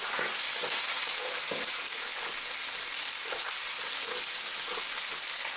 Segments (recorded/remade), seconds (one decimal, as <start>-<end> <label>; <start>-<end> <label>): 0.0-5.6 recorded